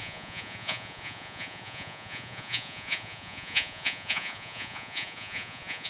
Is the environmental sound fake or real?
fake